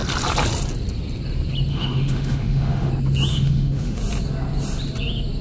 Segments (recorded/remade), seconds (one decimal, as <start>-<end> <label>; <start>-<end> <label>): 0.0-1.7 recorded; 1.7-2.9 remade; 2.9-3.3 recorded; 3.3-4.0 remade; 4.0-5.4 recorded